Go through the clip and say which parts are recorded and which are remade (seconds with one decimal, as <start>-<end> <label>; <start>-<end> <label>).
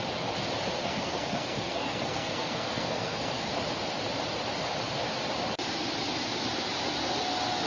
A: 0.0-0.8 recorded; 0.8-3.5 remade; 3.5-7.7 recorded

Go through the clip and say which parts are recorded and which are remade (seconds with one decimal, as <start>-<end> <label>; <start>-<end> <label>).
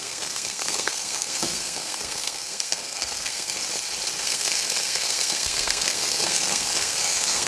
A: 0.0-3.6 remade; 3.6-4.2 recorded; 4.2-7.5 remade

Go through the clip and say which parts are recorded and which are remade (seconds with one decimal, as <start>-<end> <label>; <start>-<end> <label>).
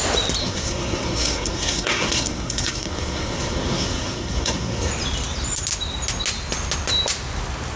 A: 0.0-0.4 recorded; 0.4-4.9 remade; 4.9-7.8 recorded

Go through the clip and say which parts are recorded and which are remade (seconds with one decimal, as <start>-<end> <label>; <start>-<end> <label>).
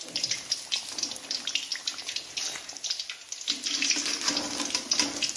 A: 0.0-5.4 recorded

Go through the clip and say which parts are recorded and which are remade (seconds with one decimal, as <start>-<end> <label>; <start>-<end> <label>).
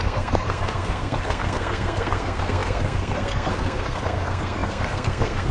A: 0.0-5.5 remade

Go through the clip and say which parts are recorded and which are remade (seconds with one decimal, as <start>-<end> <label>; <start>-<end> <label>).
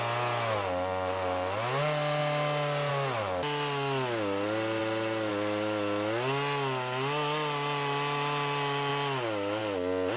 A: 0.0-10.2 recorded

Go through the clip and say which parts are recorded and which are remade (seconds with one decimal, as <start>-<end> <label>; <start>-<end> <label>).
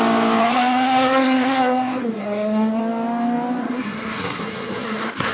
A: 0.0-0.4 recorded; 0.4-2.8 remade; 2.8-3.6 recorded; 3.6-5.3 remade